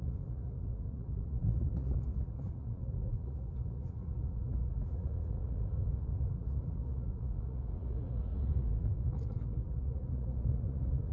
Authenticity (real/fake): fake